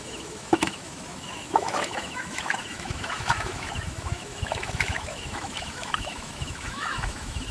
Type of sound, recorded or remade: remade